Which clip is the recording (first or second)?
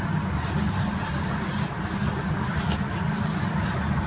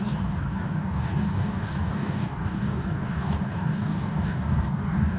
first